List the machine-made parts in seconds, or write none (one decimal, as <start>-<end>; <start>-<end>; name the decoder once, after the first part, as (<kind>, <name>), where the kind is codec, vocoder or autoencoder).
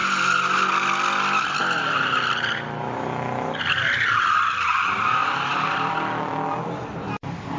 5.2-5.9 (vocoder, BigVGAN v2)